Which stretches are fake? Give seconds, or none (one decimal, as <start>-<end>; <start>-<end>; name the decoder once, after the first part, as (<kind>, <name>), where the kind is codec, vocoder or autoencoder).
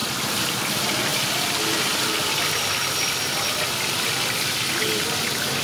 0.0-0.5 (vocoder, BigVGAN v2); 1.1-4.1